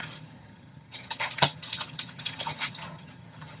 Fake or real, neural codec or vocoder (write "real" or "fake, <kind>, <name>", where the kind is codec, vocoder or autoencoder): fake, vocoder, HiFi-GAN